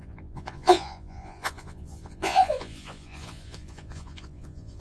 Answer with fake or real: fake